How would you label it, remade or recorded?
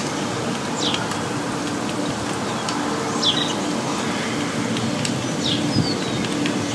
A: recorded